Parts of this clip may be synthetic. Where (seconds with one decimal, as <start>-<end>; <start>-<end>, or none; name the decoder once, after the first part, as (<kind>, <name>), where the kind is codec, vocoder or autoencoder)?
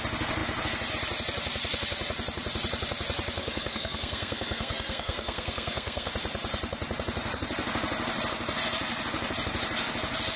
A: 3.4-6.1 (codec, SNAC)